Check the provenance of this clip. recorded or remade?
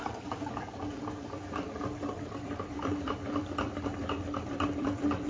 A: remade